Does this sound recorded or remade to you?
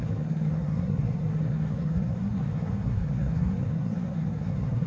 remade